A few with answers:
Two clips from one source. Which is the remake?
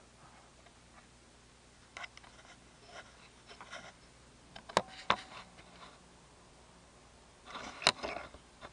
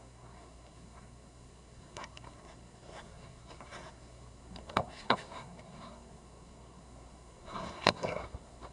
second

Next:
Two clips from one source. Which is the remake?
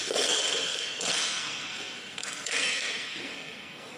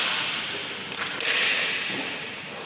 first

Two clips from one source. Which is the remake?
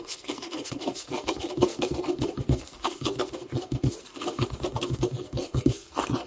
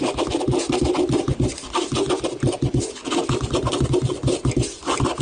first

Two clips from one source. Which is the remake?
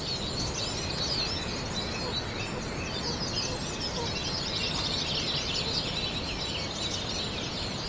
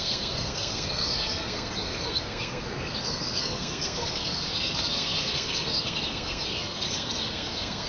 second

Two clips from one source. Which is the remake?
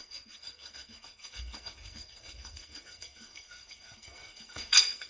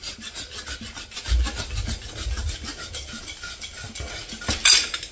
first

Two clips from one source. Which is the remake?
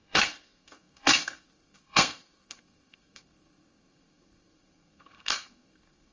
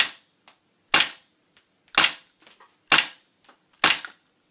first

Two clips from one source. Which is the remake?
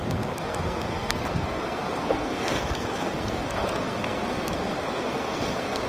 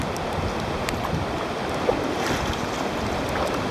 first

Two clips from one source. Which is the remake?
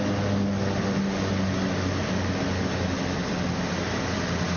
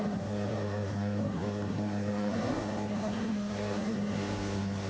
second